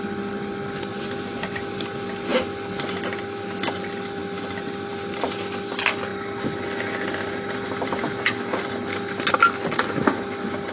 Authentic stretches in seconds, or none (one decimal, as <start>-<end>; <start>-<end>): 0.0-10.7